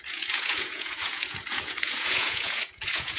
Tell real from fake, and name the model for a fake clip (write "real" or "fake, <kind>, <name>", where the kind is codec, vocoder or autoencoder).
fake, vocoder, Vocos